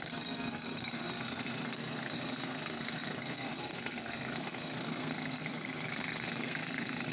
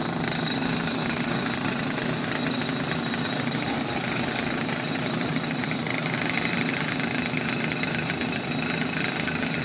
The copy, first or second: first